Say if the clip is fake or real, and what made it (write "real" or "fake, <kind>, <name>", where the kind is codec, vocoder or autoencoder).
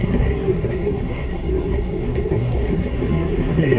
fake, codec, SNAC